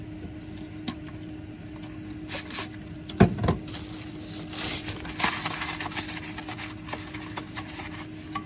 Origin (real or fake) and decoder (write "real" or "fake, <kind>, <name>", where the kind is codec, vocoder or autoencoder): real